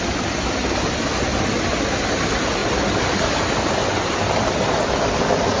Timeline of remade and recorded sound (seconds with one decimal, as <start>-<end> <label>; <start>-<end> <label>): 0.0-5.6 recorded